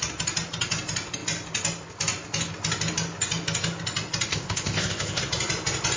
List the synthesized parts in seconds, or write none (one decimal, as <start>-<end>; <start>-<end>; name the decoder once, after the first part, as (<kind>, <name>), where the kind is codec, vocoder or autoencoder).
4.3-5.2 (codec, ZipCodec)